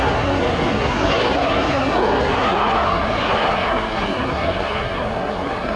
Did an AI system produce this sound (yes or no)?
yes